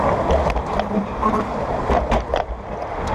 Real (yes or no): yes